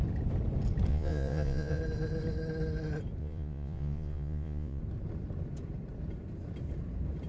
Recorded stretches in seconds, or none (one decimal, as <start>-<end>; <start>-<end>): 0.0-0.9; 1.8-3.2; 4.8-7.3